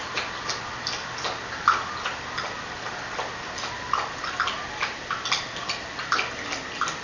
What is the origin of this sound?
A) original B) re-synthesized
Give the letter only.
A